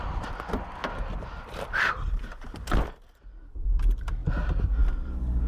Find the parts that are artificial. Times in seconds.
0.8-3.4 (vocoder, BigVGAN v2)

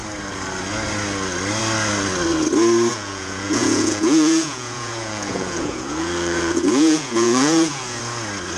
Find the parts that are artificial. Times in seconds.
2.9-8.0 (vocoder, Vocos)

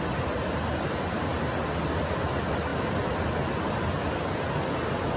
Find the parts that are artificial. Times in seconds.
2.7-3.6 (vocoder, BigVGAN v2)

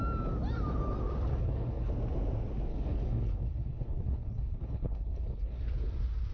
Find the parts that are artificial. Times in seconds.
1.3-1.9 (codec, HILCodec); 2.7-5.6

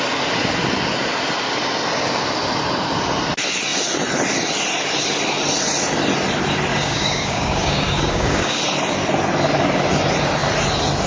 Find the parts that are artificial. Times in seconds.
6.7-8.6 (codec, DAC)